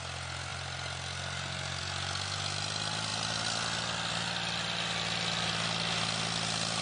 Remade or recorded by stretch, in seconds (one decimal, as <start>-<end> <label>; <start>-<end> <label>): 0.0-6.8 recorded